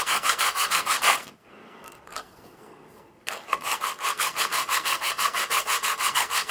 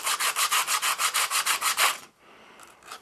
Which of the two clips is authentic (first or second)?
second